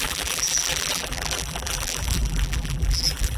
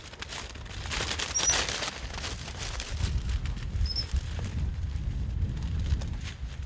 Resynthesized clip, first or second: first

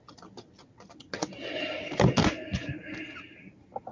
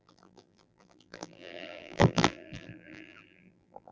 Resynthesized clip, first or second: second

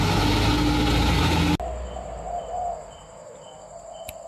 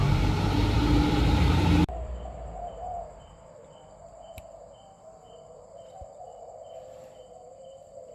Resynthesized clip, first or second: second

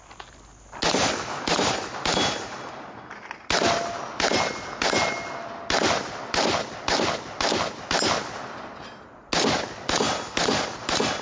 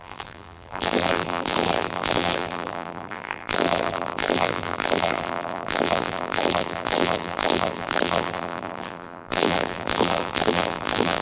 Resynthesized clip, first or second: second